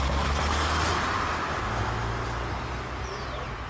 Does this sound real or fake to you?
real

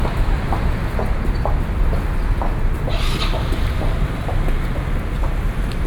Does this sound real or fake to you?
real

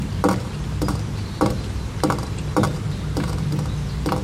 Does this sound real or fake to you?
fake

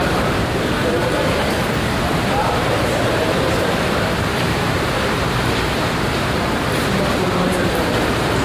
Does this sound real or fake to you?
fake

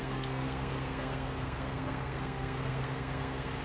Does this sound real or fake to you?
fake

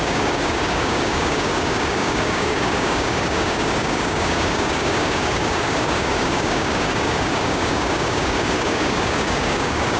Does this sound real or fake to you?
fake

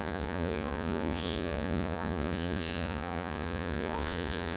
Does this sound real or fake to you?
fake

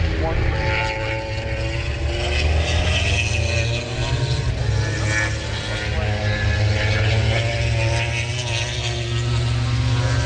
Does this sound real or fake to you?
real